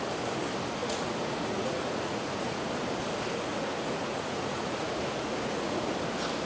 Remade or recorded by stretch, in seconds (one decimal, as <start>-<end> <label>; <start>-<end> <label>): 0.0-0.8 recorded; 0.8-2.7 remade; 2.7-3.5 recorded; 3.5-5.9 remade; 5.9-6.5 recorded